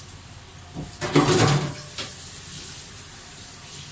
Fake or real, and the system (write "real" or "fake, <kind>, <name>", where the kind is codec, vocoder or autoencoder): real